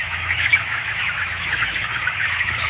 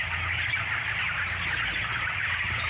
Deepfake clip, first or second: first